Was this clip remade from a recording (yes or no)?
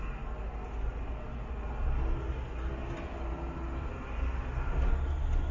no